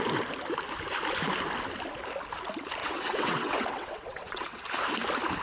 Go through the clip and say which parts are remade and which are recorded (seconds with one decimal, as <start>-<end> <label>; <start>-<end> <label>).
0.0-2.8 recorded; 2.8-4.6 remade; 4.6-5.4 recorded